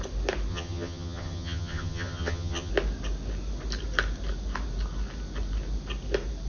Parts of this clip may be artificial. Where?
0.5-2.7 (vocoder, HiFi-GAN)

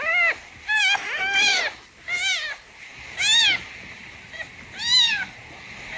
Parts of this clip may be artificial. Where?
0.8-1.6 (autoencoder, DAC-VAE)